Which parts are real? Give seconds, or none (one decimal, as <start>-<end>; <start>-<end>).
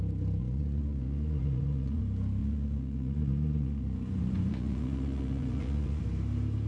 0.0-0.4; 2.0-2.4; 6.0-6.7